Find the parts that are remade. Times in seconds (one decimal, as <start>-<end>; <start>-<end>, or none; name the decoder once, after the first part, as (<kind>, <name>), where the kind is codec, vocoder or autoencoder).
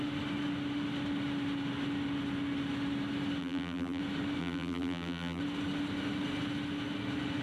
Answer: 3.4-4.0 (vocoder, BigVGAN v2); 4.4-5.4